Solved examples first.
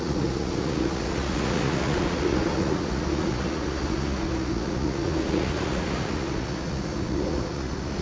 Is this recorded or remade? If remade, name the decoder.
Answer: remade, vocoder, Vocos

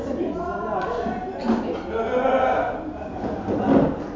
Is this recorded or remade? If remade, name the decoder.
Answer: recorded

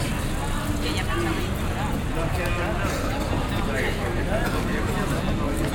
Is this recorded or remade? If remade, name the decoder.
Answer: recorded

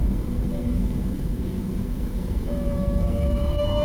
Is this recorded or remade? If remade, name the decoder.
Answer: remade, codec, SNAC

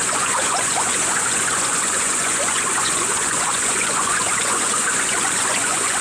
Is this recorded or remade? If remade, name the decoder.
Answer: remade, vocoder, Vocos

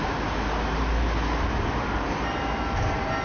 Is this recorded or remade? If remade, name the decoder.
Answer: recorded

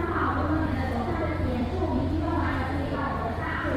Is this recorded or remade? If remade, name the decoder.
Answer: remade, vocoder, BigVGAN v2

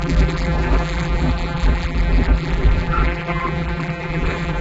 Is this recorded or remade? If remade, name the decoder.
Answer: remade, vocoder, BigVGAN v2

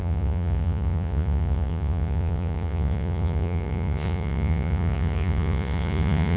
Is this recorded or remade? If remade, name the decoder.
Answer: remade, vocoder, Vocos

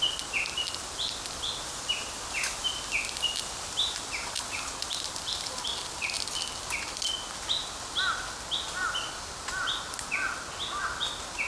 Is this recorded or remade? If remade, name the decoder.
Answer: recorded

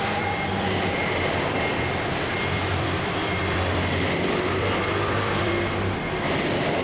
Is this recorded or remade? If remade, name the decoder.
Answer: remade, vocoder, BigVGAN v2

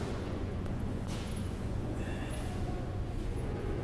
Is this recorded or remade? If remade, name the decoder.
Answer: remade, vocoder, Vocos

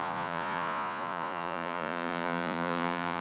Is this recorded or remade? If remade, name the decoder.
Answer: remade, vocoder, Vocos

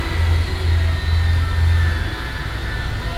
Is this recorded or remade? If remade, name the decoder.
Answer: recorded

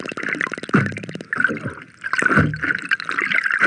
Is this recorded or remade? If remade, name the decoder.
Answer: recorded